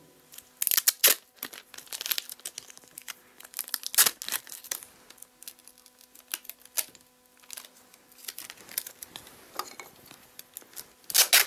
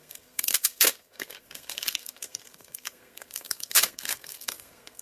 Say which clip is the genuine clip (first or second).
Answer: first